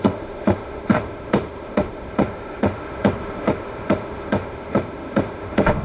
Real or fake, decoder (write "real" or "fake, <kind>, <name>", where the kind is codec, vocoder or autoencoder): fake, autoencoder, DAC-VAE